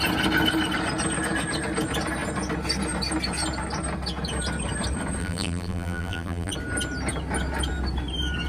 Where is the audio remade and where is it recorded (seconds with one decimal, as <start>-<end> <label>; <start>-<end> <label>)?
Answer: 0.0-5.2 recorded; 5.2-6.5 remade; 6.5-8.5 recorded